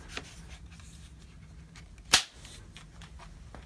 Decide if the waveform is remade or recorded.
recorded